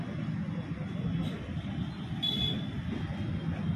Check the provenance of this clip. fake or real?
real